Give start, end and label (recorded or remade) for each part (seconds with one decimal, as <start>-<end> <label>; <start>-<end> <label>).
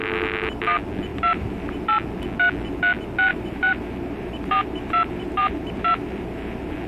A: 0.0-1.1 recorded; 1.1-1.8 remade; 1.8-3.3 recorded; 3.3-6.9 remade